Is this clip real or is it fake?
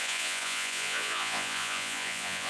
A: fake